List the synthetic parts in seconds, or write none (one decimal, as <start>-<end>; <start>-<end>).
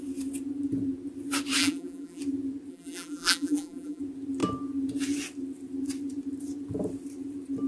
1.6-2.2; 2.7-4.0